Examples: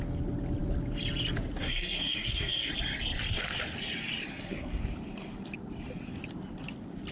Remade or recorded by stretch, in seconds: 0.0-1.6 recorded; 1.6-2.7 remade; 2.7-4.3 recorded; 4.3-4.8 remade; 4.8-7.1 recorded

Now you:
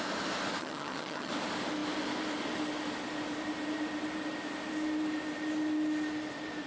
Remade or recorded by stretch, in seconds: 0.0-0.6 recorded; 0.6-1.3 remade; 1.3-6.7 recorded